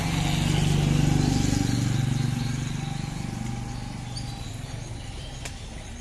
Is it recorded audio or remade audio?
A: recorded